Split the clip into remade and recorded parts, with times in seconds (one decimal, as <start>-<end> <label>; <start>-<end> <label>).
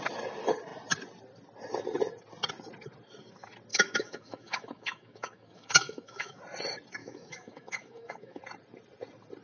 0.0-3.7 recorded; 3.7-6.4 remade; 6.4-7.0 recorded; 7.0-8.4 remade; 8.4-9.4 recorded